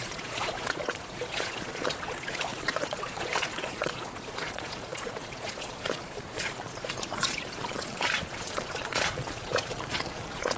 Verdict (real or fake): fake